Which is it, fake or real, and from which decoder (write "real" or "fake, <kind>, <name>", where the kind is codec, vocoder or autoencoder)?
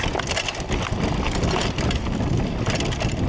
real